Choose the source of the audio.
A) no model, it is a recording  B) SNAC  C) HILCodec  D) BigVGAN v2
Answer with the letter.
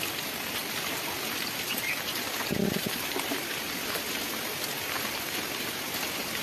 A